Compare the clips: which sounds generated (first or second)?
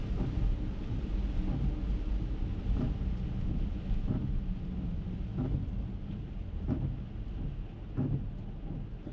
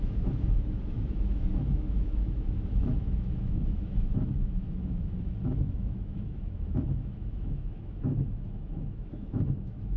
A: second